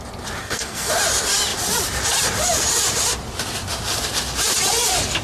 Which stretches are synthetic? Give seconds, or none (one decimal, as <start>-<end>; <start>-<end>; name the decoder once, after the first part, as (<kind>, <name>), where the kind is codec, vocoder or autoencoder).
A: 0.4-0.9 (codec, SNAC)